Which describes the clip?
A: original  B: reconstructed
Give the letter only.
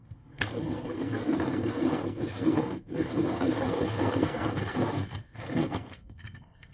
B